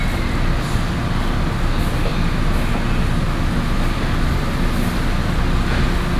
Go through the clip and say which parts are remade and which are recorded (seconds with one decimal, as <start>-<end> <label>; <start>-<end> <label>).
0.0-6.2 recorded